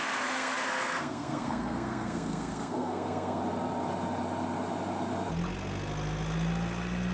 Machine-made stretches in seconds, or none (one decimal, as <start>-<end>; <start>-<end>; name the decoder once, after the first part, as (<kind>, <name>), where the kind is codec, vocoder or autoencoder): 0.0-3.4 (codec, SNAC)